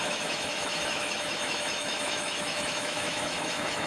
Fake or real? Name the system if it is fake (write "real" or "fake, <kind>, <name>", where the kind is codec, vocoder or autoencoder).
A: fake, autoencoder, DAC-VAE